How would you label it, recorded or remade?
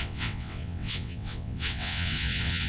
remade